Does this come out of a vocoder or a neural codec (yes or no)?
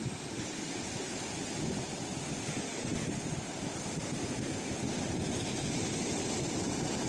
no